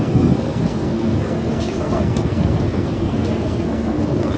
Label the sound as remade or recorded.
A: remade